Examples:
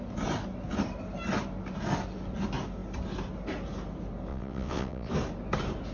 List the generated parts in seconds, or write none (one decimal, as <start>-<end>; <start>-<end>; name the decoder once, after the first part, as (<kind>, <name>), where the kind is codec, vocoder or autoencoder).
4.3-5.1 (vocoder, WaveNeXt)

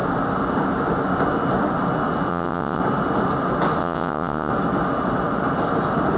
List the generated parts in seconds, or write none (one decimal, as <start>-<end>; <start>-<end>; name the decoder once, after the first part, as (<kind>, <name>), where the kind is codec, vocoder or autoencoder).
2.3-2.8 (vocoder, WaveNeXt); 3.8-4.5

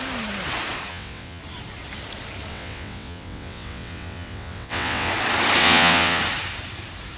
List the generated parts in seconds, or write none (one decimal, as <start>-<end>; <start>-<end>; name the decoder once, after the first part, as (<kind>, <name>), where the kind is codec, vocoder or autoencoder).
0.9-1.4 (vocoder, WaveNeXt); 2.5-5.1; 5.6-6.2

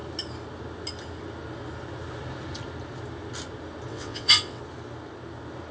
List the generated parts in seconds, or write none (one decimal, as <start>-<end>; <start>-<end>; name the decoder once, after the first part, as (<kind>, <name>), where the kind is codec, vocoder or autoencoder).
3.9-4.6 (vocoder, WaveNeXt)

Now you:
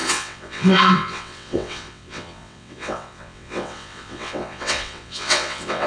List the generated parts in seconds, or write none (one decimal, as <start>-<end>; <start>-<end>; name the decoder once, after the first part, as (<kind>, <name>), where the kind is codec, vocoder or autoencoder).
0.0-5.9 (vocoder, WaveNeXt)

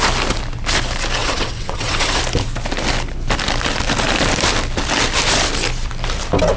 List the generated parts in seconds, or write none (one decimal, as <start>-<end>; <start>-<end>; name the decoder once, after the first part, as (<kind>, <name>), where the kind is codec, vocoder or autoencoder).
1.2-2.2 (vocoder, WaveNeXt)

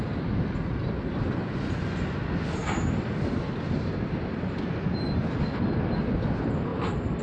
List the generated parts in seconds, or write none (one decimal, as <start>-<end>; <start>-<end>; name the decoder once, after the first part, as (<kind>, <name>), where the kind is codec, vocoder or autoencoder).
none